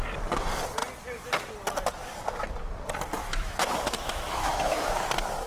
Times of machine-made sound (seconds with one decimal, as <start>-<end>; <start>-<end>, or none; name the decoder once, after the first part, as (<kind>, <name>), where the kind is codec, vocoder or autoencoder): 3.2-5.0 (autoencoder, DAC-VAE)